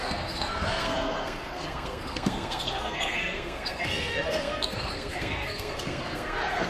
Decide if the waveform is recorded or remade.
remade